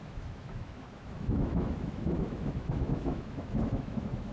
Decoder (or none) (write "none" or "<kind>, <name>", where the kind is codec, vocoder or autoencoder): autoencoder, DAC-VAE